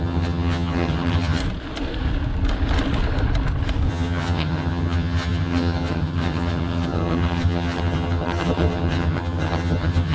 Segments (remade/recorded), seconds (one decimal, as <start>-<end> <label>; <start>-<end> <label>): 0.0-1.4 remade; 1.4-3.9 recorded; 3.9-10.1 remade

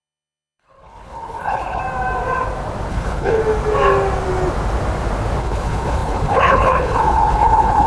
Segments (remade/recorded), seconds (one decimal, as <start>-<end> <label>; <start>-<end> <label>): 0.0-1.8 remade; 1.8-2.9 recorded; 2.9-3.4 remade; 3.4-5.4 recorded; 5.4-7.9 remade